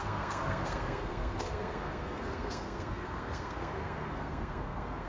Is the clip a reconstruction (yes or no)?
yes